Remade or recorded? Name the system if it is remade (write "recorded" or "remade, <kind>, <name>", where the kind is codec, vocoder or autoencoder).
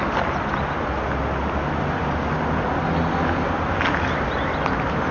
recorded